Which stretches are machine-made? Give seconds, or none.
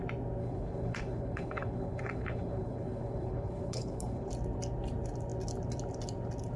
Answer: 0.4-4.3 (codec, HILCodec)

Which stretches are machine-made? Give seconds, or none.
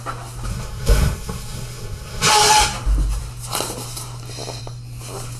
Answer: 0.5-2.3 (codec, SNAC)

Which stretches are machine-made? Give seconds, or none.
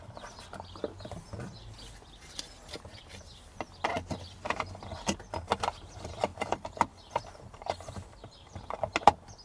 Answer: 6.3-8.5 (vocoder, BigVGAN v2)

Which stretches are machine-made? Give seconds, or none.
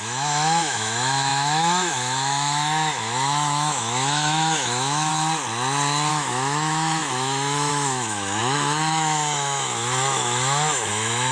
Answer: 0.0-5.1 (autoencoder, DAC-VAE); 6.1-11.3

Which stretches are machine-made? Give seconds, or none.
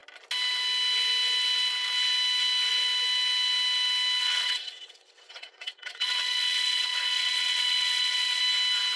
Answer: 4.2-8.4 (vocoder, WaveNeXt)